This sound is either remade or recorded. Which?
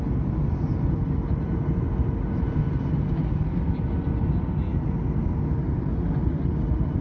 recorded